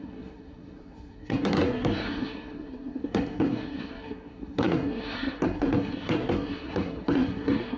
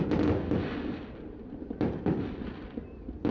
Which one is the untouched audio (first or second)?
second